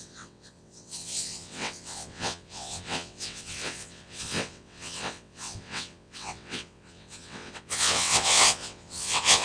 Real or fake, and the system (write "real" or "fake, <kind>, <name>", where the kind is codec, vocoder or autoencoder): fake, vocoder, WaveNeXt